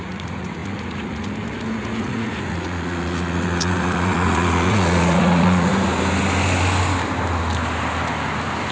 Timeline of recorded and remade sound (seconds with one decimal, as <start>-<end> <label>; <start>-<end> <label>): 0.0-5.7 remade; 5.7-8.7 recorded